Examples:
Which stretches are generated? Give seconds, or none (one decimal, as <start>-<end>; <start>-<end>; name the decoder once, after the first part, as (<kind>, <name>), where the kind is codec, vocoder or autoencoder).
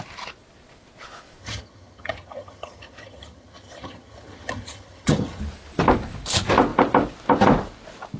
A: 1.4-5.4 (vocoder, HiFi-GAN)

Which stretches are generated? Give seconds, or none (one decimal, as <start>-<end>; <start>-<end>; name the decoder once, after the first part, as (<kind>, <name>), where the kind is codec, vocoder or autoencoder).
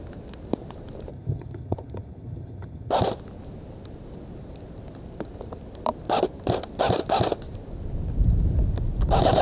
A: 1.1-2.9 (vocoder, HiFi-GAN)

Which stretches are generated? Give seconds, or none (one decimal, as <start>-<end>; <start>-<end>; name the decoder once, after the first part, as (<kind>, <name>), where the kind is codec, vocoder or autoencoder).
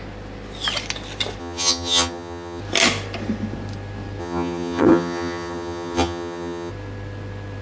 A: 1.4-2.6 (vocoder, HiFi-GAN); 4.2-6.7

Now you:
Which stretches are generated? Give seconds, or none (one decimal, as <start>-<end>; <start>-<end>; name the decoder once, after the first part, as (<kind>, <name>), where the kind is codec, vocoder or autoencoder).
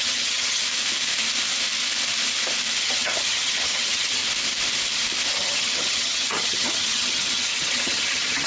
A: 0.0-0.6 (vocoder, HiFi-GAN); 2.8-4.2; 5.3-8.5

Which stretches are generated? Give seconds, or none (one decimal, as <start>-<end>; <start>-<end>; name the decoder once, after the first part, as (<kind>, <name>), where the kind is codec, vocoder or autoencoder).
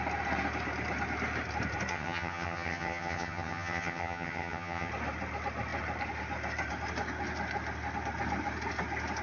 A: 1.9-4.9 (vocoder, HiFi-GAN)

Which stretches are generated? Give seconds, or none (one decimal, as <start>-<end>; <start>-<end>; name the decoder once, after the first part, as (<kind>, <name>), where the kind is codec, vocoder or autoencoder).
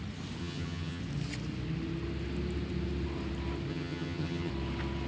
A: 0.4-1.0 (vocoder, HiFi-GAN); 3.7-4.5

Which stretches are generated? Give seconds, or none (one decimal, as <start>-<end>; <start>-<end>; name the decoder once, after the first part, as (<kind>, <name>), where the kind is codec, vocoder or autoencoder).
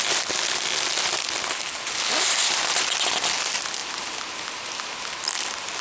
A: none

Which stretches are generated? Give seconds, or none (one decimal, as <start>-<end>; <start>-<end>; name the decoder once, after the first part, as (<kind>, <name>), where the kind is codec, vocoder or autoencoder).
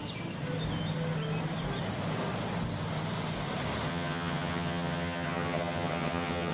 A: 3.9-6.5 (vocoder, HiFi-GAN)